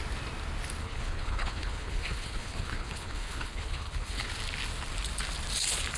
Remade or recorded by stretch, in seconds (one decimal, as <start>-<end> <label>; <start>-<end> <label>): 0.0-0.8 recorded; 0.8-4.3 remade; 4.3-6.0 recorded